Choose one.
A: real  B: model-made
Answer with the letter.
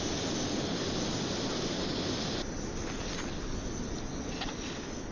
A